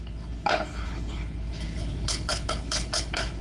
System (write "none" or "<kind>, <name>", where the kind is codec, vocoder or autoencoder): codec, HILCodec